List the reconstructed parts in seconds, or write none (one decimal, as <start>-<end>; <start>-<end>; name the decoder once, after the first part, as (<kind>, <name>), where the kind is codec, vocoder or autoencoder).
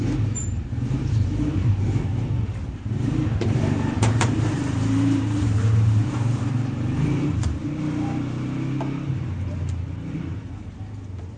0.0-7.6 (vocoder, BigVGAN v2); 9.1-11.4